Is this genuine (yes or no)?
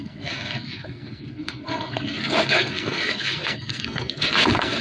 no